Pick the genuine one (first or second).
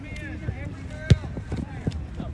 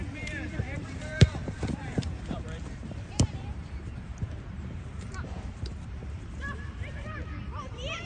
first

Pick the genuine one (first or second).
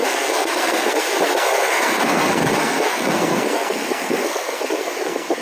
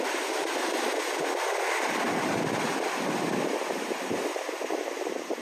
second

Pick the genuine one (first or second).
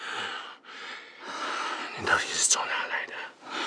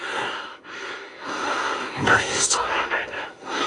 first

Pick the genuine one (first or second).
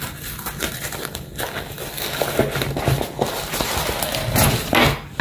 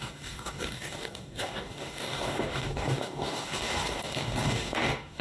first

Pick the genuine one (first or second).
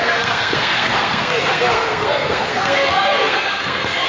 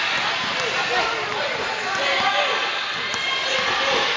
second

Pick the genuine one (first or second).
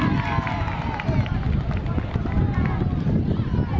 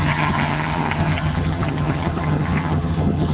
first